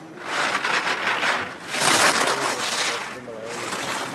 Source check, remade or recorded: recorded